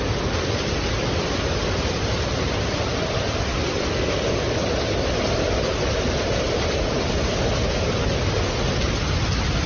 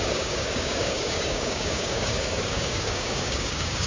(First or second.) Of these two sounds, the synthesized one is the second